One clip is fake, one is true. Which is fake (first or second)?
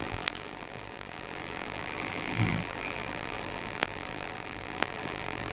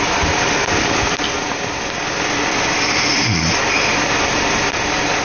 first